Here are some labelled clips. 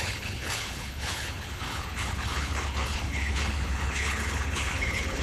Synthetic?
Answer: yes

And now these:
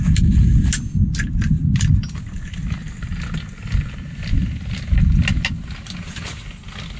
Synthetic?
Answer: no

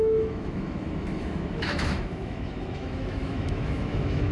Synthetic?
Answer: yes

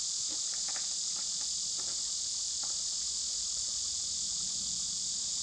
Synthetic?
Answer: yes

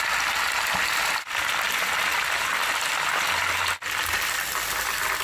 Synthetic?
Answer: no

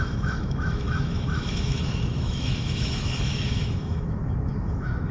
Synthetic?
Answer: yes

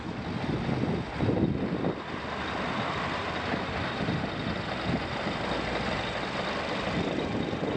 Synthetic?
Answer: no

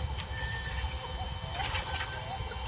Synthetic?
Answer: no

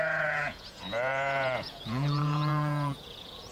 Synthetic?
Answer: yes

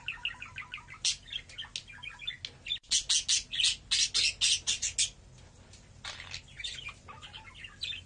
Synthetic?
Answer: no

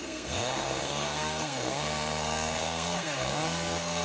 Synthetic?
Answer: yes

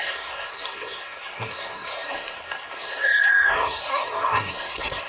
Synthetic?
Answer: yes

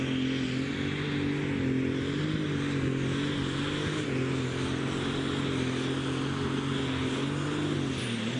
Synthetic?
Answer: no